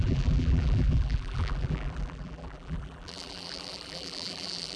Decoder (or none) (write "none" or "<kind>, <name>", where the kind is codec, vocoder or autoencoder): vocoder, BigVGAN v2